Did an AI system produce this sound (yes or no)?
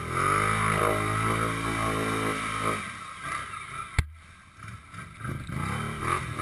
no